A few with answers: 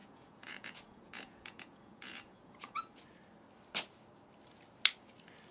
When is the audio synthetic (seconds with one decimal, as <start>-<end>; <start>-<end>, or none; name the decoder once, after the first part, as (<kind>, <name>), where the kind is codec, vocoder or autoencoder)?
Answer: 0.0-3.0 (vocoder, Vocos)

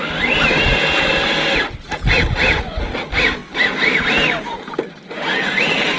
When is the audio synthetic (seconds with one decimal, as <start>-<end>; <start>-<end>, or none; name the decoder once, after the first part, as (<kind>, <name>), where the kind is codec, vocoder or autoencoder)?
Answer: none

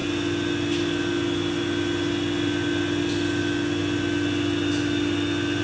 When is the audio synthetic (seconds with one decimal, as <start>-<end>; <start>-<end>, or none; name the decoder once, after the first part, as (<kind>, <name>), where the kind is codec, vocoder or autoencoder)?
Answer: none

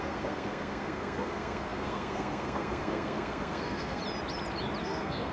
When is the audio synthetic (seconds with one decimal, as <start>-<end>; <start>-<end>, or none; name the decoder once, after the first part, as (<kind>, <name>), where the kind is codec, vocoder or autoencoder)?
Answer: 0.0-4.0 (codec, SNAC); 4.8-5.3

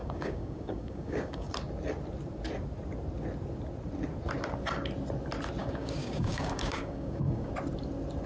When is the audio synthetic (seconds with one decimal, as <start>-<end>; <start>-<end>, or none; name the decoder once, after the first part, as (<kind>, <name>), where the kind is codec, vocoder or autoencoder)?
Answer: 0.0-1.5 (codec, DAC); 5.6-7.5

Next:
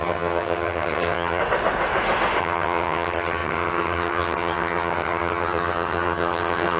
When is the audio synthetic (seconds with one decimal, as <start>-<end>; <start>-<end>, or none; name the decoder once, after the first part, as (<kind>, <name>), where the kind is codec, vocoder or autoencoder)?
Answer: 0.0-1.4 (vocoder, HiFi-GAN); 2.4-6.8

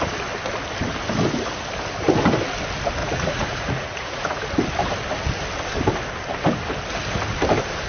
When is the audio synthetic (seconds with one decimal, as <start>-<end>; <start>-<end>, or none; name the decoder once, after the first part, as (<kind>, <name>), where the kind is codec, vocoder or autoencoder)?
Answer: 3.0-4.4 (vocoder, Vocos)